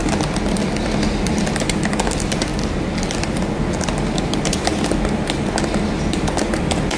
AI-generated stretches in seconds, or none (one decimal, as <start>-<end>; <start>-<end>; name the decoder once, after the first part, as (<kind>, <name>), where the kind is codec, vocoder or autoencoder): none